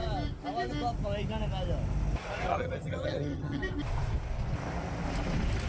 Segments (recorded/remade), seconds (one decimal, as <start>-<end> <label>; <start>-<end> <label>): 0.0-2.5 recorded; 2.5-3.6 remade; 3.6-5.7 recorded